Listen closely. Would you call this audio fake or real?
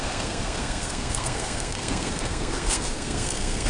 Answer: fake